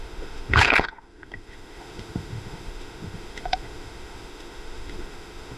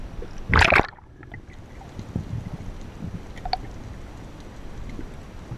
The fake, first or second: first